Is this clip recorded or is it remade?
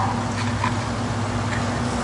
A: recorded